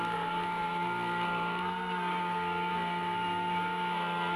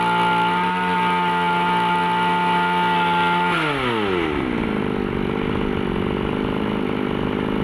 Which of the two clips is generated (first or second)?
first